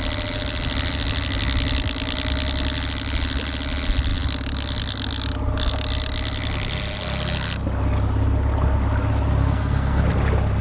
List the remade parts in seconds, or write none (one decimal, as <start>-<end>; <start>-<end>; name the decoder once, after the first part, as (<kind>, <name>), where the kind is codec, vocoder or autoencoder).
9.4-10.0 (codec, SNAC)